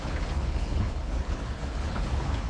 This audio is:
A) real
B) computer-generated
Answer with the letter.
B